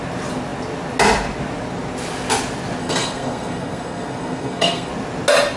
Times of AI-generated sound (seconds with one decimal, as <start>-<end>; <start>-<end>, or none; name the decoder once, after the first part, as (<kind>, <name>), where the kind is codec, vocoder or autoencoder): 2.8-4.9 (codec, SNAC)